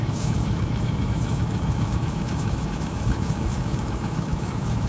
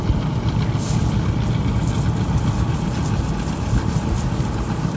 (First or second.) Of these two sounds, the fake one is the first